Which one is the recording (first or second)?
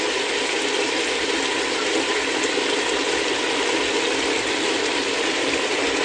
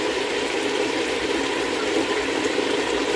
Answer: first